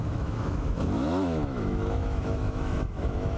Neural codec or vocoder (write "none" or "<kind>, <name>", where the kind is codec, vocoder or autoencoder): autoencoder, DAC-VAE